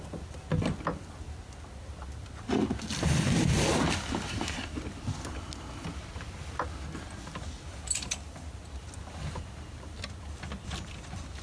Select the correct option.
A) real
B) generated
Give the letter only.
A